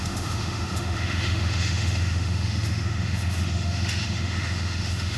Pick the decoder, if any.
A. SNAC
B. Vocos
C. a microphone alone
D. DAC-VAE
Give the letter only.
D